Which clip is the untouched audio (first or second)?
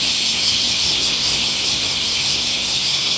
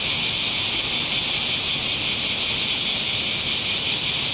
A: second